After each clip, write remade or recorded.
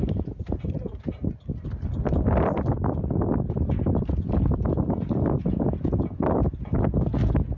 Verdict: recorded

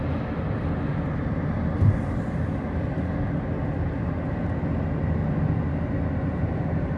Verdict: recorded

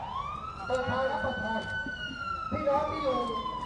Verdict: recorded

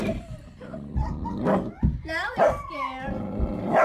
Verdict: recorded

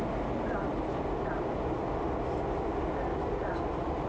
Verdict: recorded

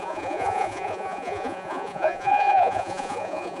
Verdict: remade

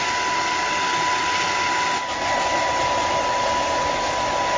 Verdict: recorded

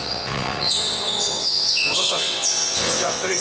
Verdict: remade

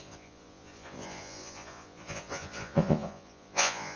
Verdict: remade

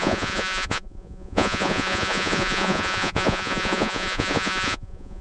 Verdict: remade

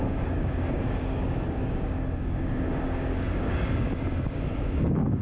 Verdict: remade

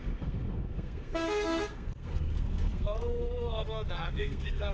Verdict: remade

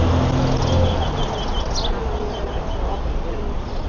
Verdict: recorded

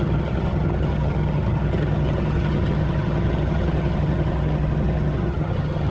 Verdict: remade